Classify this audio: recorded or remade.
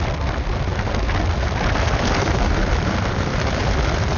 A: recorded